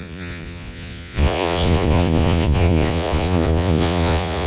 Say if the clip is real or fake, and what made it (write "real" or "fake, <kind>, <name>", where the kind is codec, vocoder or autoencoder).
fake, vocoder, Vocos